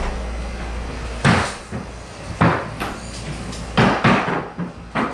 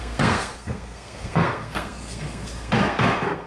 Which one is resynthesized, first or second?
second